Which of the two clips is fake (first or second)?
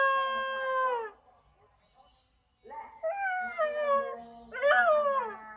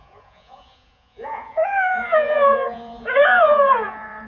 second